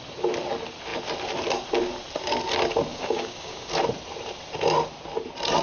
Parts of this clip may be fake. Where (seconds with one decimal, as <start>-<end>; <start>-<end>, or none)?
2.9-3.7